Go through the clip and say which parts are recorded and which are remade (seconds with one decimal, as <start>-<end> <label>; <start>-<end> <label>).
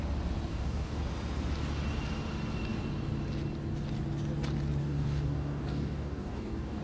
0.0-0.5 recorded; 0.5-1.0 remade; 1.0-4.8 recorded; 4.8-6.8 remade